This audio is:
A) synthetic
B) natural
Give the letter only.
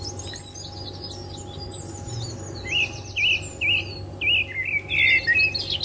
B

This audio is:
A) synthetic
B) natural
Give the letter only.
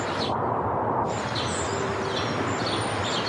B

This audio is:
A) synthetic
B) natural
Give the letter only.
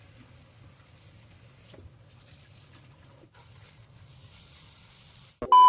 B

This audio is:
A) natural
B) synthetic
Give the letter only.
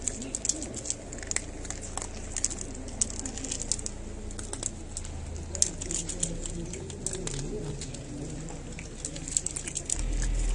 A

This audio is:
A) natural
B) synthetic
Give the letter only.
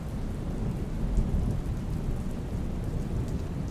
A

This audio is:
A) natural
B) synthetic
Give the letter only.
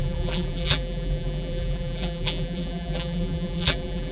B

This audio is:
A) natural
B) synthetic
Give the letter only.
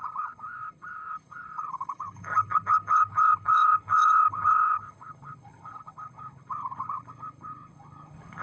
B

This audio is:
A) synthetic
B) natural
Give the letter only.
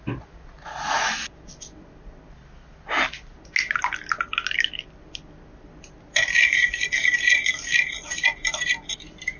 B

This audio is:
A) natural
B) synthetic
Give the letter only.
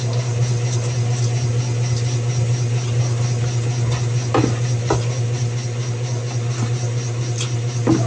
A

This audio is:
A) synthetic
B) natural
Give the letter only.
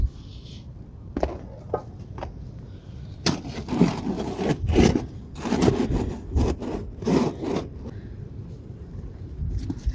B